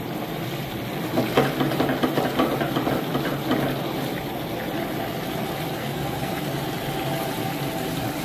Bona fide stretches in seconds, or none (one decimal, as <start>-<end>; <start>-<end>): 0.0-5.8; 6.3-8.2

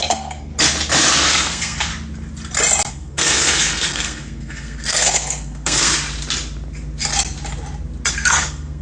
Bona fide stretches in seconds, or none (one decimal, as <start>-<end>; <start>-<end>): 0.5-1.3; 1.9-2.9; 5.9-8.1

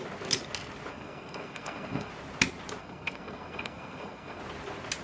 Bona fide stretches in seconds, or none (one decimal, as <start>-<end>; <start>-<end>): 0.0-0.9; 2.1-2.8; 4.4-5.0